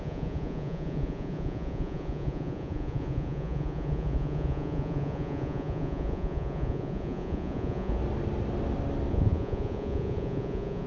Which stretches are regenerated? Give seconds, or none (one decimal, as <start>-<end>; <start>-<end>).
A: 0.0-8.0; 9.1-10.9